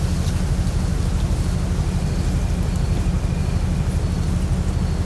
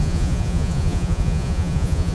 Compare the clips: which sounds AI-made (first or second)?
second